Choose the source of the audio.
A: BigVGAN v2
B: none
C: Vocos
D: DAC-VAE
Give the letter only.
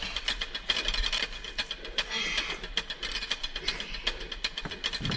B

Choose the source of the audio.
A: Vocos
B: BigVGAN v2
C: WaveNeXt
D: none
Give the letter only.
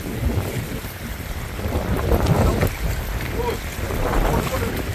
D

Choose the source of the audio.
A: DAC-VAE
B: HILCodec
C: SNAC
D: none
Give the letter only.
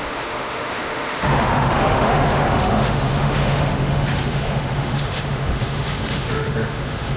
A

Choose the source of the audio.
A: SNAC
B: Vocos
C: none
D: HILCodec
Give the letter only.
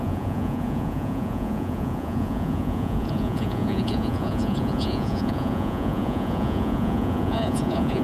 B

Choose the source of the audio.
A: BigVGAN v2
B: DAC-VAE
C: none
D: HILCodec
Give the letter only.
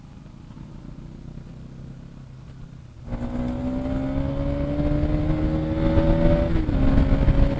C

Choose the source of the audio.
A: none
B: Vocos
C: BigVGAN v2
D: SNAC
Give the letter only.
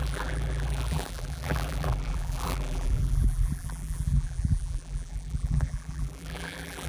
C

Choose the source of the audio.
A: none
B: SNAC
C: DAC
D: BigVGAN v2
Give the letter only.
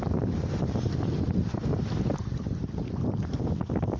A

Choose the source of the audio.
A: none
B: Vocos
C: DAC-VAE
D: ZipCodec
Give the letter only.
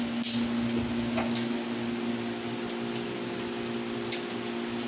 A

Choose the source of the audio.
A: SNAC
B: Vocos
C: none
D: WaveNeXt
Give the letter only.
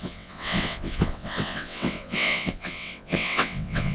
D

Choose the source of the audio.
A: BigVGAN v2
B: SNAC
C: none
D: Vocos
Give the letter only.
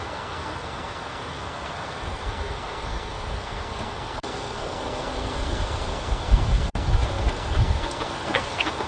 B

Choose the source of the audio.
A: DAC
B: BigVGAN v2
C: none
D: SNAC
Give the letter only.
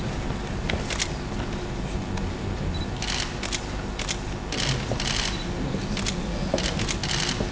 C